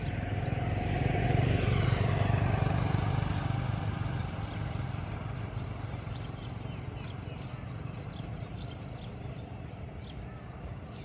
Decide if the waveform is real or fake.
real